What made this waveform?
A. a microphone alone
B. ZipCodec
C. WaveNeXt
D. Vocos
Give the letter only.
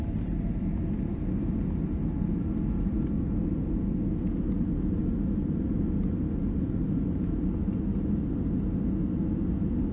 A